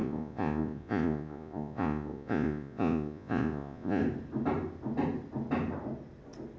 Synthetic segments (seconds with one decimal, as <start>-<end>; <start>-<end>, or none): 0.0-4.0